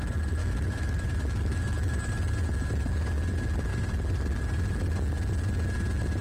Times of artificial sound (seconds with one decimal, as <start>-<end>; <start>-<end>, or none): 0.4-2.1